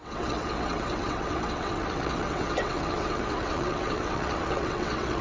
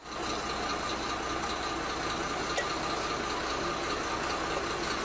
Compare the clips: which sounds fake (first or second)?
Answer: first